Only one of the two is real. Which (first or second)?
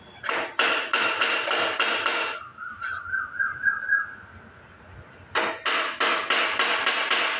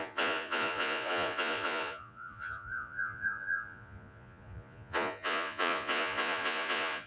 first